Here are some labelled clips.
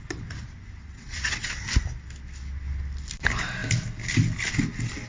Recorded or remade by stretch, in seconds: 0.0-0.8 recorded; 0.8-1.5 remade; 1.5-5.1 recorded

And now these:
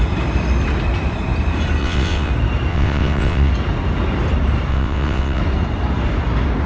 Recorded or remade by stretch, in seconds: 0.0-1.8 recorded; 1.8-2.3 remade; 2.3-2.7 recorded; 2.7-3.5 remade; 3.5-4.7 recorded; 4.7-5.4 remade; 5.4-6.7 recorded